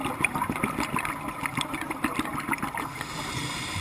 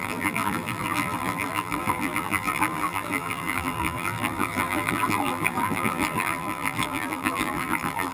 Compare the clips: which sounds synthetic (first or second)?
second